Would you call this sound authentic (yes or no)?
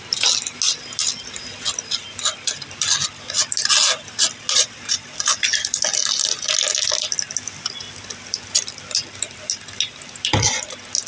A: yes